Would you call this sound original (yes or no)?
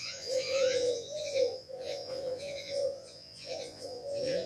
no